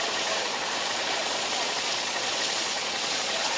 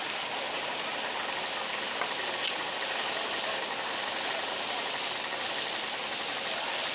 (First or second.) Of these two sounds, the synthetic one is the first